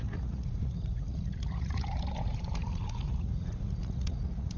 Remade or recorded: remade